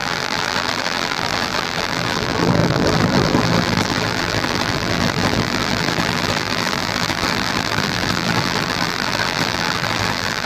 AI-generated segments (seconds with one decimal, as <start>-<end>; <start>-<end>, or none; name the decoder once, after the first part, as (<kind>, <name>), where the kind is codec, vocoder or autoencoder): 0.0-10.5 (vocoder, BigVGAN v2)